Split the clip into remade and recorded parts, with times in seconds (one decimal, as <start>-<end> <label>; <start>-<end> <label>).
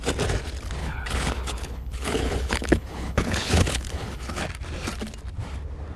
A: 0.0-0.8 recorded; 0.8-4.4 remade; 4.4-6.0 recorded